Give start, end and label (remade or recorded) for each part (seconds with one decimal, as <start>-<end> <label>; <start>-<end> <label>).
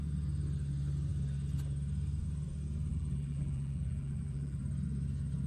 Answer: 0.0-2.9 recorded; 2.9-4.6 remade; 4.6-5.5 recorded